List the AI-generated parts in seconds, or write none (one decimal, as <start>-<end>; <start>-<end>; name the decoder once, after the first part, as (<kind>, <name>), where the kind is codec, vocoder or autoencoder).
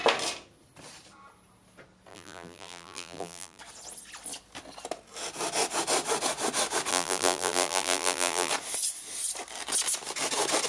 2.1-3.6 (vocoder, BigVGAN v2); 6.9-8.5